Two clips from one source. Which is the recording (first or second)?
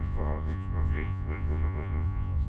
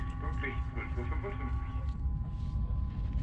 second